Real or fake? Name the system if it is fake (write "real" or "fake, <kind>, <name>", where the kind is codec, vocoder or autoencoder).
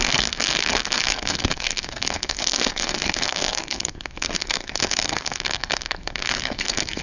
fake, codec, SNAC